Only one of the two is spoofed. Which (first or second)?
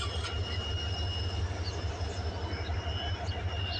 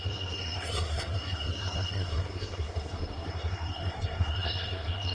second